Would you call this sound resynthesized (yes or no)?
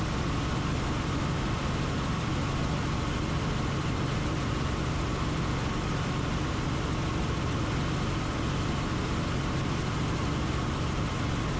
no